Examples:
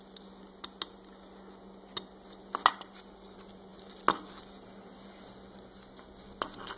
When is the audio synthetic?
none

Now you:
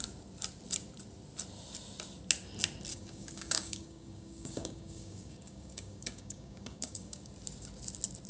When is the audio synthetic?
2.9-7.3 (codec, DAC)

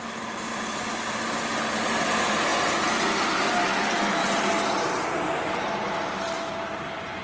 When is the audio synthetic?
none

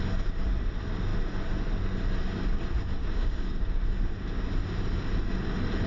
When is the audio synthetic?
3.0-3.8 (codec, DAC)

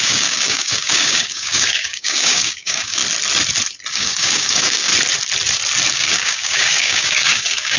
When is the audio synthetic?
0.0-3.0 (codec, DAC); 3.9-4.9; 5.9-7.8

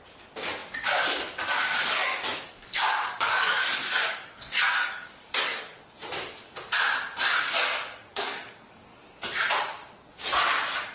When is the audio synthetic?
2.0-5.6 (codec, DAC); 8.1-9.0

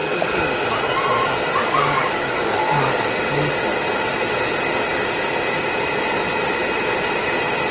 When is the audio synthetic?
0.0-0.5 (codec, DAC); 1.6-3.1

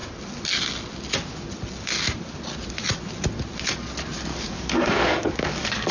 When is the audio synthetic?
4.3-5.9 (codec, DAC)